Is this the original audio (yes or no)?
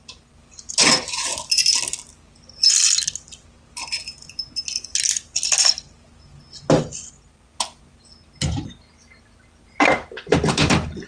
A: yes